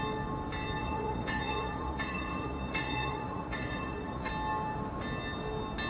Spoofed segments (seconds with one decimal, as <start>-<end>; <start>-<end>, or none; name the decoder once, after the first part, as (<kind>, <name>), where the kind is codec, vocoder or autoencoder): 0.8-4.3 (vocoder, Vocos)